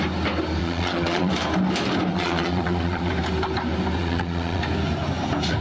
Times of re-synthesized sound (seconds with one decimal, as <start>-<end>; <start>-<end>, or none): 0.6-1.3; 2.1-3.1; 4.0-4.6

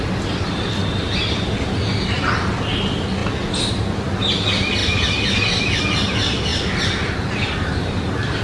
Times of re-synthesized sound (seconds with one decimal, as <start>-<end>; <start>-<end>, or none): 6.5-8.4

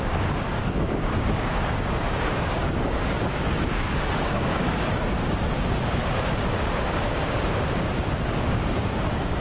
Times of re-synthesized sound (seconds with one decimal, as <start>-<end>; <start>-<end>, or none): 0.0-6.0; 6.6-9.4

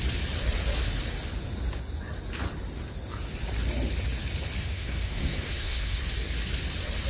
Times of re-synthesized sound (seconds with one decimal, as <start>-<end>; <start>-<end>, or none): 4.6-6.0

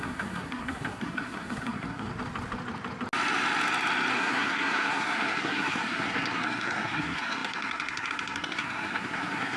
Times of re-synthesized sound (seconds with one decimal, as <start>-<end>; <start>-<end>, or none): 0.0-2.1; 4.1-9.6

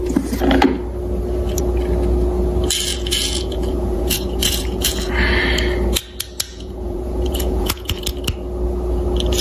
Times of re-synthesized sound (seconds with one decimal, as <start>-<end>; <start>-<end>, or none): 2.9-5.1; 6.5-8.0